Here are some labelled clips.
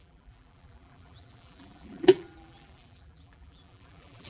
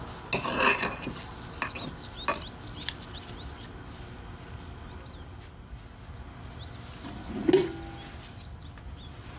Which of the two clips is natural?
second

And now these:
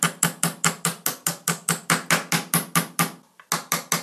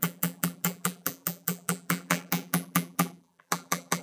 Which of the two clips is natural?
first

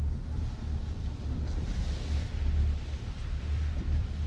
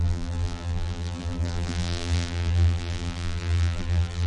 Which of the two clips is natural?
first